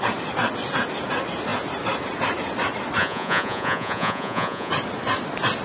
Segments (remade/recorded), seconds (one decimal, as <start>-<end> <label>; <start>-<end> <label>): 0.0-3.0 recorded; 3.0-4.7 remade; 4.7-5.6 recorded